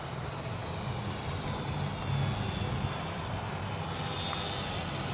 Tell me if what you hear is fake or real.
real